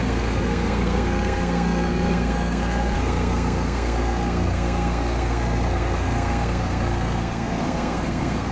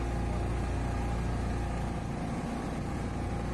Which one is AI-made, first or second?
first